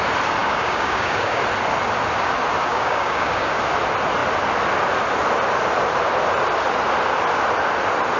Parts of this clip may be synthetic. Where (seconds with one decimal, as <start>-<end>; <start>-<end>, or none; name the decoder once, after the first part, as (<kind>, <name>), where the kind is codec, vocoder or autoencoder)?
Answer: 0.4-1.4 (codec, DAC); 2.7-3.6